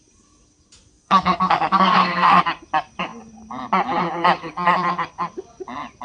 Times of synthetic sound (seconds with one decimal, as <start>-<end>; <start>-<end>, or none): 0.9-2.4